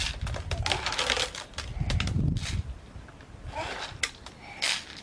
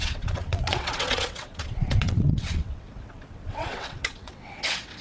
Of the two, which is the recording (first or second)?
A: first